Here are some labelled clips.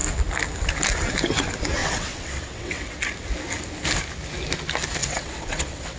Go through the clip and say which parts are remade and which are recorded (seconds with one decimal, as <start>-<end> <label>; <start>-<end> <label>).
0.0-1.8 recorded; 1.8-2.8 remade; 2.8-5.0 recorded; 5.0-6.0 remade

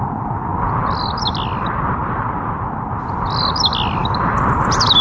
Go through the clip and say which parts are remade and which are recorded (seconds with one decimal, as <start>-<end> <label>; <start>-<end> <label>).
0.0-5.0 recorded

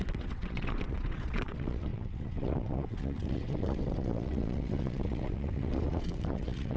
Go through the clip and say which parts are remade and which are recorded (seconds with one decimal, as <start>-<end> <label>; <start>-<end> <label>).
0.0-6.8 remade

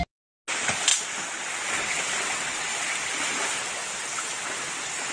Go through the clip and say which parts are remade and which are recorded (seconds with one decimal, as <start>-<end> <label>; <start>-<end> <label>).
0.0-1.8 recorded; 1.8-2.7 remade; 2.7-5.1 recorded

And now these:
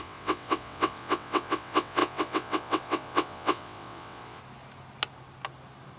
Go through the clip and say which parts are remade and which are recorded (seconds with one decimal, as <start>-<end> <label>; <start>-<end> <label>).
0.0-4.4 remade; 4.4-6.0 recorded

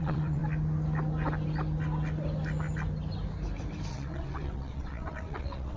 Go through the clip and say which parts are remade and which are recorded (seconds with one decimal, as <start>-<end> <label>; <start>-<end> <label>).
0.0-0.4 remade; 0.4-3.9 recorded; 3.9-5.8 remade